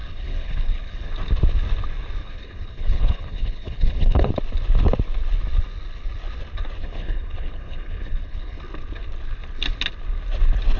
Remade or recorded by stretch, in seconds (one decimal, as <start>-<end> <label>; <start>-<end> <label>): 0.0-1.1 remade; 1.1-2.2 recorded; 2.2-4.3 remade; 4.3-6.8 recorded; 6.8-8.6 remade; 8.6-10.8 recorded